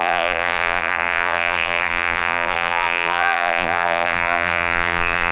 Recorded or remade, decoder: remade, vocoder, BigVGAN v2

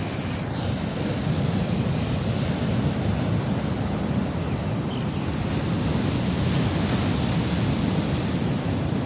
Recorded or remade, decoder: recorded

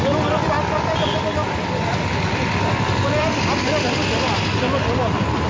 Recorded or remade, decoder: remade, vocoder, BigVGAN v2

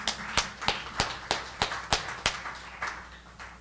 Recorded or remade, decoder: recorded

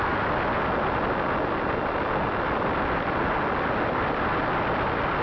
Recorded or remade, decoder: recorded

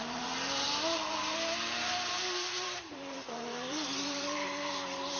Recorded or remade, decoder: remade, vocoder, BigVGAN v2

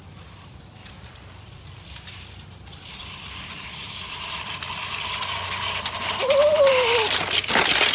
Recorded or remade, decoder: remade, vocoder, BigVGAN v2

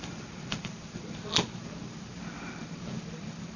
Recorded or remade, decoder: remade, vocoder, BigVGAN v2